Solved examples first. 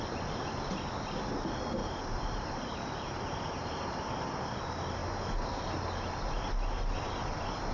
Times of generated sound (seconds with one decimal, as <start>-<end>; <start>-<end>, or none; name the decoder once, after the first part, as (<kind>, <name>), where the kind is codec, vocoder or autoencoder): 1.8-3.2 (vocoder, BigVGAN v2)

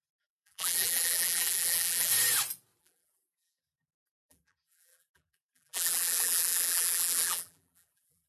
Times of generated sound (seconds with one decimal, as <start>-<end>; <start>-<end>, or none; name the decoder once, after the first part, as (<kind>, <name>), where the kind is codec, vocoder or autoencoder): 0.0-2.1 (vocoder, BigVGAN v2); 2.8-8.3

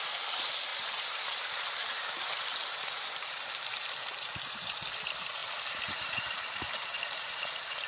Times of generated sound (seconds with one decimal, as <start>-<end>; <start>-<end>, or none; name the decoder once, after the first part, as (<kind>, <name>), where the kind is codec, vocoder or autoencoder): 0.0-5.4 (vocoder, BigVGAN v2); 6.0-7.9

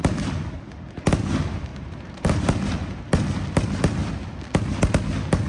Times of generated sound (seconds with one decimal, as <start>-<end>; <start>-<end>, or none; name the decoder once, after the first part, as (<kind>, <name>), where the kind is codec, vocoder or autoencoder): 1.7-2.4 (vocoder, BigVGAN v2)

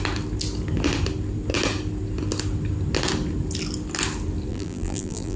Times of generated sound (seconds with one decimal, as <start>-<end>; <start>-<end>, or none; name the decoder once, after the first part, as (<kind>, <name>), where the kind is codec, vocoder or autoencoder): 4.5-5.4 (vocoder, BigVGAN v2)

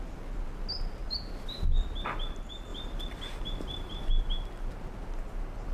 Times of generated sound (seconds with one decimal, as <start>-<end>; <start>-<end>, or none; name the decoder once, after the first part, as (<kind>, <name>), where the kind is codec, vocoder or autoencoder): 1.0-1.6 (vocoder, BigVGAN v2); 2.7-4.1